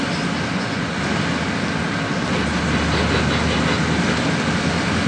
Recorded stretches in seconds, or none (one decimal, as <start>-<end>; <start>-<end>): 0.0-0.5; 1.0-5.1